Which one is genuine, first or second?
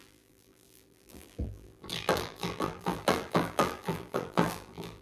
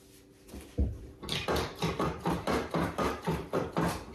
second